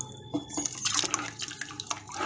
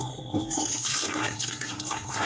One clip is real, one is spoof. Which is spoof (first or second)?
second